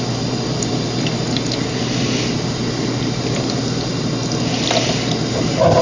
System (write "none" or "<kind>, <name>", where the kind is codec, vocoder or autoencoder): none